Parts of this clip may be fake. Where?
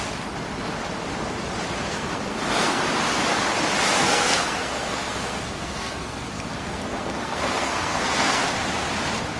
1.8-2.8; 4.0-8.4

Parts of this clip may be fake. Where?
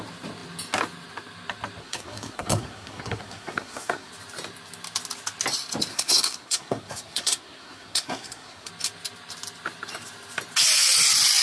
1.8-4.1; 5.9-8.7